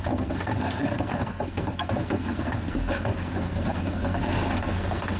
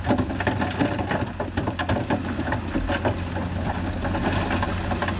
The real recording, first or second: second